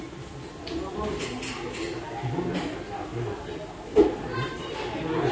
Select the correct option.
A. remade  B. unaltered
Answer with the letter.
B